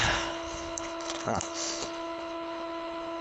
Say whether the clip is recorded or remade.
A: remade